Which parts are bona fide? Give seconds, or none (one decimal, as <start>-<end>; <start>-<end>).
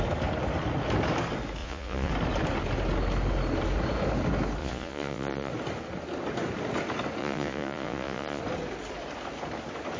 0.0-1.6; 2.1-4.6; 5.5-7.2; 8.4-10.0